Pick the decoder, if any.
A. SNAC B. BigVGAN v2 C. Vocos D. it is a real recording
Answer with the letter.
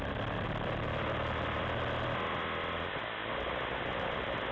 D